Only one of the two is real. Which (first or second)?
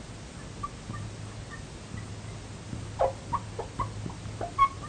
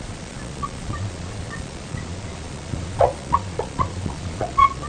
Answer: first